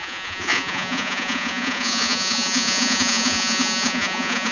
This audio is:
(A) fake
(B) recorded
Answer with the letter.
A